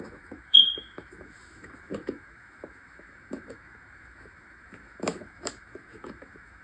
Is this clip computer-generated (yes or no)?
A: yes